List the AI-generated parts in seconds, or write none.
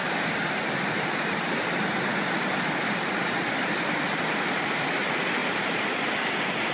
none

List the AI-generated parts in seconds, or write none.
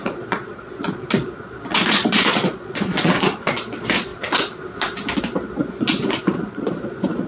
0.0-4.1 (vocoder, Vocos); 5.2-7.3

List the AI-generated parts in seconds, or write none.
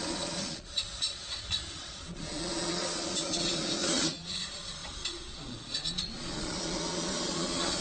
0.0-7.8 (vocoder, Vocos)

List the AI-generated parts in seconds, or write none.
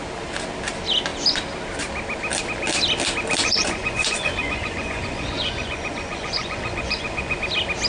3.4-7.4 (vocoder, Vocos)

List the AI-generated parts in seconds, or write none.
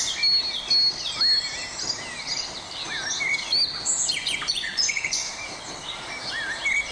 4.2-5.3 (vocoder, Vocos)